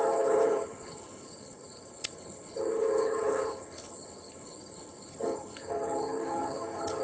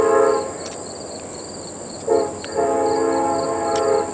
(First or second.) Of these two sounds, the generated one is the first